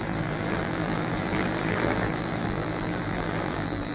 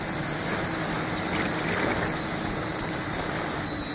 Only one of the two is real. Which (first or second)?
second